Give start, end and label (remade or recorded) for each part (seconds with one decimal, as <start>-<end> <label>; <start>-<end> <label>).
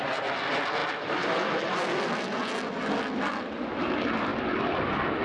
0.0-5.2 recorded